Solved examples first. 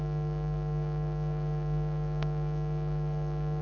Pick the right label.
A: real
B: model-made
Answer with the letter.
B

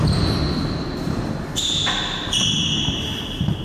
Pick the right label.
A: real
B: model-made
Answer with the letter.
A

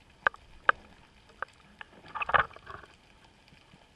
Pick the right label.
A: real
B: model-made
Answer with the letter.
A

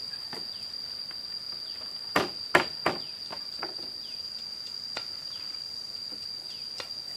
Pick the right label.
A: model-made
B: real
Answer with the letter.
B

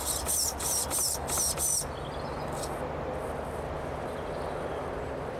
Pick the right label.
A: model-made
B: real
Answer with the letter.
B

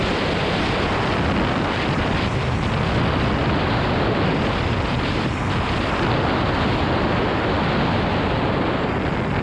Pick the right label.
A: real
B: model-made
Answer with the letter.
A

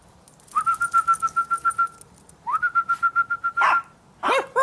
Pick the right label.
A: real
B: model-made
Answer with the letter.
A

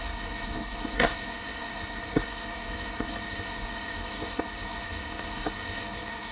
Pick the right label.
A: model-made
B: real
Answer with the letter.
A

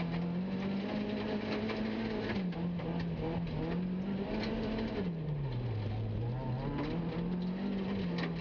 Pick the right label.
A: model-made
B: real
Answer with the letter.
B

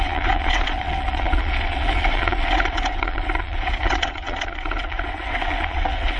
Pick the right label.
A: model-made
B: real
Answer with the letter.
A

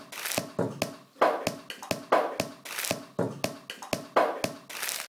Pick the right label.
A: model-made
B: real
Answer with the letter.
B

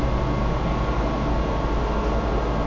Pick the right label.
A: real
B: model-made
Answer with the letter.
A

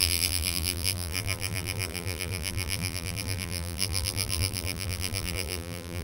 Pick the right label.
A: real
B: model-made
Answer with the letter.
B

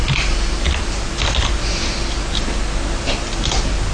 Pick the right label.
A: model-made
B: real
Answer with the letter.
B